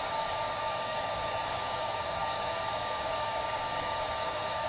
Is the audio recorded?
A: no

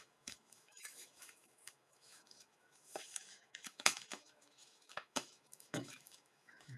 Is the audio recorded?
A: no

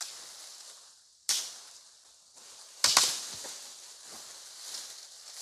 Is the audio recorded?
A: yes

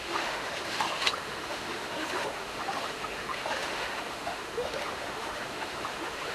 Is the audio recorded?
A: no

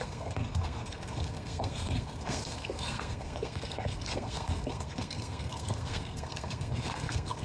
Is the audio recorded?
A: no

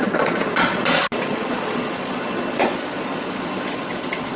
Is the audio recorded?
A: no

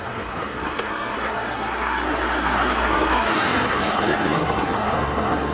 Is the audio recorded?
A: no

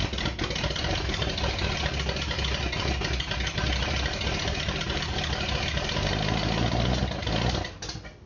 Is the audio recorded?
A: yes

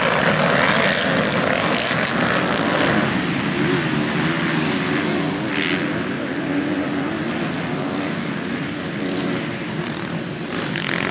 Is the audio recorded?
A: yes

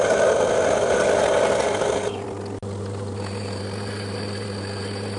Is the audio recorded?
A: yes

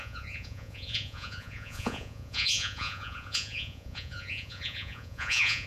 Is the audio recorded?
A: no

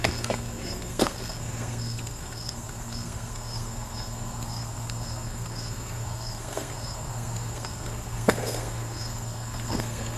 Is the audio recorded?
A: no